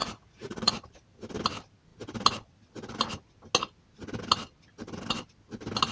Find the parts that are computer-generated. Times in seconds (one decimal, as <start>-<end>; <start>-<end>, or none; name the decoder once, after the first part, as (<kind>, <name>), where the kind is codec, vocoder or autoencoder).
0.0-0.7 (vocoder, Vocos)